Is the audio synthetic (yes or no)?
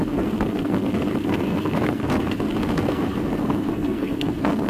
yes